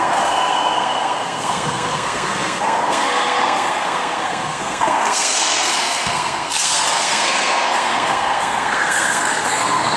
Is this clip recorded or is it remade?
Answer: remade